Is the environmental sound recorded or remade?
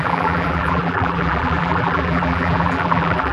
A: remade